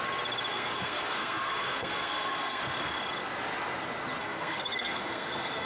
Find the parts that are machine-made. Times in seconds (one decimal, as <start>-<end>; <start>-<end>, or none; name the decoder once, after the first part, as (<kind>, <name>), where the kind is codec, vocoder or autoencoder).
0.5-2.6 (codec, SNAC); 4.2-5.7